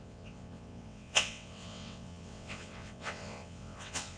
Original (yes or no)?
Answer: no